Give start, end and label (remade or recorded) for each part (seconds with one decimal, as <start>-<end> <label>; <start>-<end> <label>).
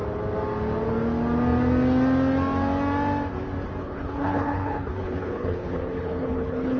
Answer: 0.0-3.8 recorded; 3.8-6.8 remade